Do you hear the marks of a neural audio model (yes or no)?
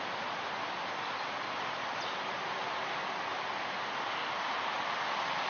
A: no